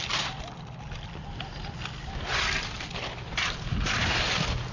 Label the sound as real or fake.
real